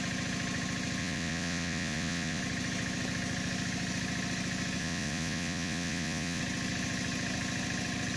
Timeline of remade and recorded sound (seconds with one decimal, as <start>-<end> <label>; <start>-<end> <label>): 0.0-1.0 recorded; 1.0-2.4 remade; 2.4-4.8 recorded; 4.8-6.4 remade; 6.4-8.2 recorded